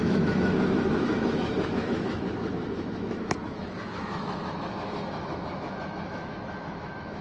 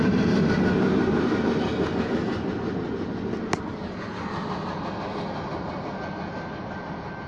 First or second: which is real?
second